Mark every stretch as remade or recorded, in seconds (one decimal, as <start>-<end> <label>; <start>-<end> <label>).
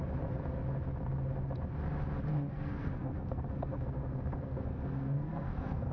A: 0.0-2.5 recorded; 2.5-5.9 remade